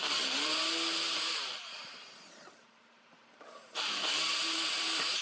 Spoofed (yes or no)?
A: yes